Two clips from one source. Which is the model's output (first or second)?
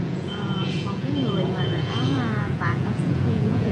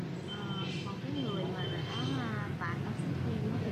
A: first